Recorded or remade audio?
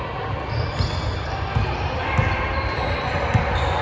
recorded